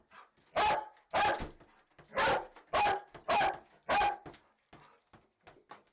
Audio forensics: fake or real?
real